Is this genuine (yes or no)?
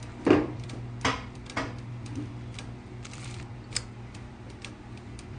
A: no